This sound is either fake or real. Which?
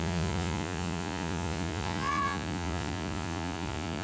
fake